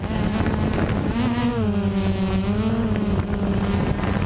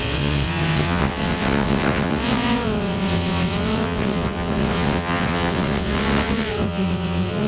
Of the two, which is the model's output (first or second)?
second